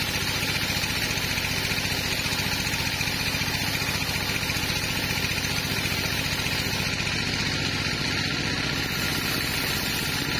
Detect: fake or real real